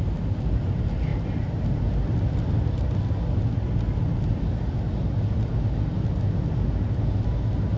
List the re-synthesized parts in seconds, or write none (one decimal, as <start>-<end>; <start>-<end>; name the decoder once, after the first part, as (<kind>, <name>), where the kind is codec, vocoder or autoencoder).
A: none